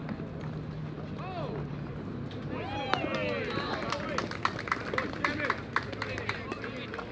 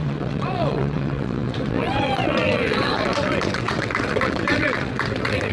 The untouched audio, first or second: first